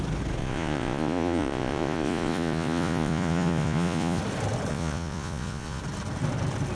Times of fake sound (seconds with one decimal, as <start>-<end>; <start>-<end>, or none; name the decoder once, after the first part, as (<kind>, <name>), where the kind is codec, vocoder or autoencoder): 0.4-4.2 (vocoder, Vocos); 4.7-5.8